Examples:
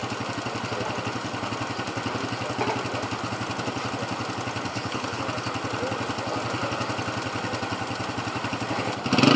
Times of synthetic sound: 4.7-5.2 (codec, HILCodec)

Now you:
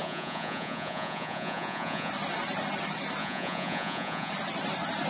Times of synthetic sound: 0.0-2.1 (vocoder, Vocos); 3.2-4.3

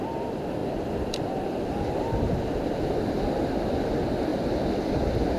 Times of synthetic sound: 0.6-3.8 (vocoder, BigVGAN v2); 4.3-5.4